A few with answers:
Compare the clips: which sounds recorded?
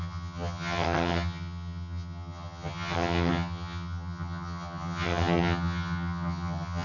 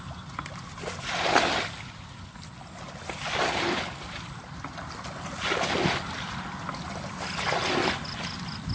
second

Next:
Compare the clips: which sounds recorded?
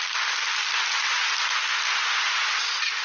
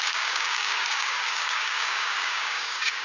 first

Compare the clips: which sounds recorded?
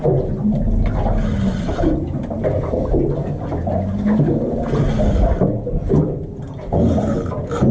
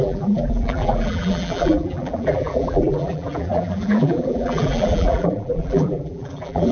first